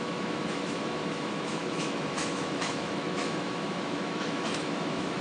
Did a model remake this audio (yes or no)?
yes